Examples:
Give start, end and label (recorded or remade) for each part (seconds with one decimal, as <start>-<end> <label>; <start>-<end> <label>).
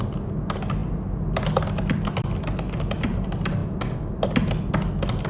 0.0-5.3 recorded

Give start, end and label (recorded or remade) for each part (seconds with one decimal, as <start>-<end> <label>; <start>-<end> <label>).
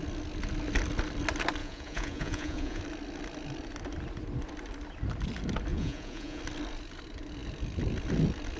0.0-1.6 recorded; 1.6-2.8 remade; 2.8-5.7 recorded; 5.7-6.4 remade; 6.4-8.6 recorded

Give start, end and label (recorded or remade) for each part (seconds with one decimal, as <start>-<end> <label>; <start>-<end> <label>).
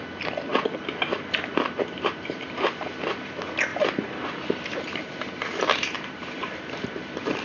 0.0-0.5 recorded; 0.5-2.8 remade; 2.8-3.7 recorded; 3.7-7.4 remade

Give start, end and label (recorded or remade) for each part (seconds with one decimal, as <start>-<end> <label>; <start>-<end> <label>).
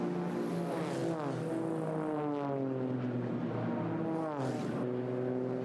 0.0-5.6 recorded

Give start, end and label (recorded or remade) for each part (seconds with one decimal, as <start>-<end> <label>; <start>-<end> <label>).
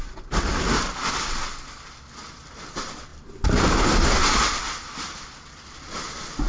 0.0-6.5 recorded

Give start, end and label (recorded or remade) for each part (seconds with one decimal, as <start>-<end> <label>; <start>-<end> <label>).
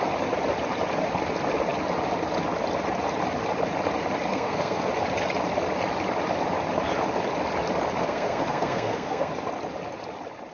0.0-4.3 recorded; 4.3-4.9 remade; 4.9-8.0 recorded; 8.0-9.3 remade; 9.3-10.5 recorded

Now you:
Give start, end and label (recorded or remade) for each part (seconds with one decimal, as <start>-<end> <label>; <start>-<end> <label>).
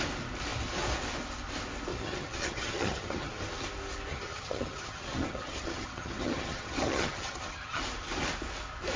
0.0-1.9 recorded; 1.9-3.4 remade; 3.4-4.1 recorded; 4.1-7.8 remade; 7.8-9.0 recorded